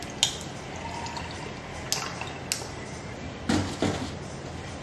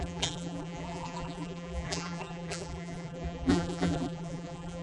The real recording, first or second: first